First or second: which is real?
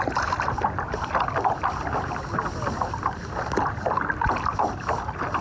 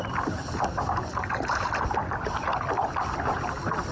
second